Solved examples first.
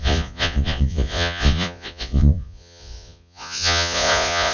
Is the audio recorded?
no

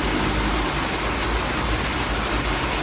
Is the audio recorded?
yes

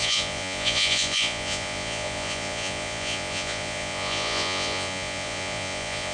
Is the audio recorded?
no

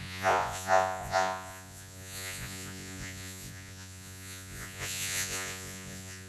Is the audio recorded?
no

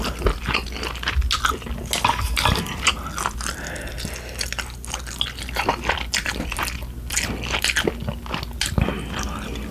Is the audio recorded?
yes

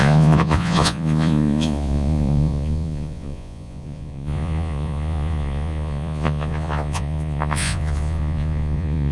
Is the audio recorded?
no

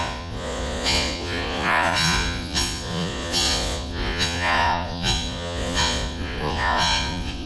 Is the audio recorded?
no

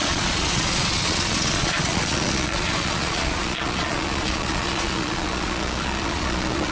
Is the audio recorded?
no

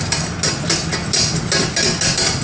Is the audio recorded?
yes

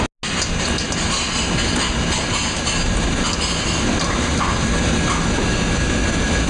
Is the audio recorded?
yes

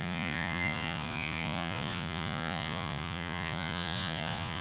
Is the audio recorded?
no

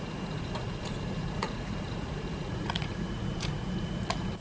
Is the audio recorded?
no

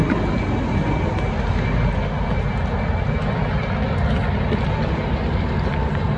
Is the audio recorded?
yes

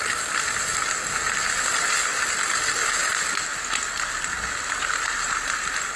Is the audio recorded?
yes